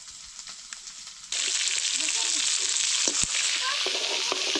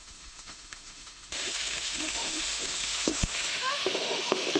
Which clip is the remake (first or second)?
second